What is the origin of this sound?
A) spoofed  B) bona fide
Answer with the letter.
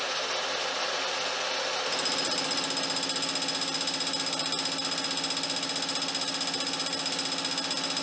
B